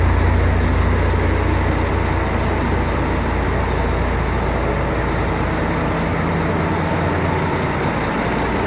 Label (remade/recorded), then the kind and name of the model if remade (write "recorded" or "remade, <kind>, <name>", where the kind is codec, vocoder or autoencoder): recorded